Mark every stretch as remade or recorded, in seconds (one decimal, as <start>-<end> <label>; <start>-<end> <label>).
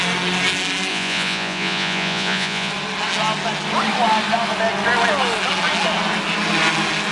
0.0-0.9 recorded; 0.9-2.7 remade; 2.7-7.1 recorded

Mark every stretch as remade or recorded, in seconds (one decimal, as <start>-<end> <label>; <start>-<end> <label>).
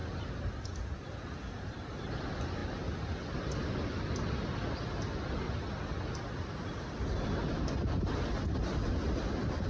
0.0-9.7 recorded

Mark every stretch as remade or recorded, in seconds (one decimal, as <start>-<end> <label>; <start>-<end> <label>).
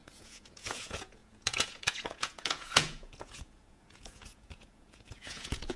0.0-5.8 remade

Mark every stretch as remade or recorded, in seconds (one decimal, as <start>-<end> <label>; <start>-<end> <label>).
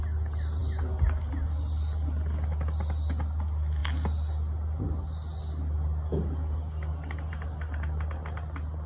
0.0-8.9 recorded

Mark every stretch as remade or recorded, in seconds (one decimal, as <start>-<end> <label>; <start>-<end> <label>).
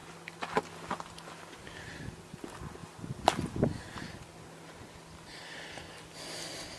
0.0-6.8 recorded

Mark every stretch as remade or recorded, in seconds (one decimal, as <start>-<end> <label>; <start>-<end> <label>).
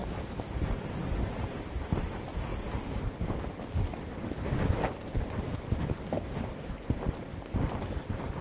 0.0-8.4 recorded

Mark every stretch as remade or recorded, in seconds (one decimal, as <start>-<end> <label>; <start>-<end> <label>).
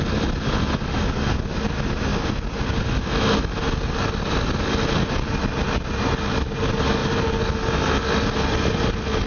0.0-9.3 recorded